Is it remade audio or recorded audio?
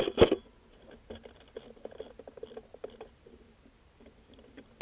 recorded